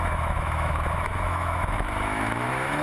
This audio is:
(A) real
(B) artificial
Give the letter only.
B